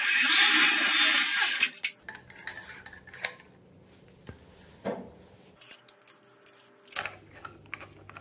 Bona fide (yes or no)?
yes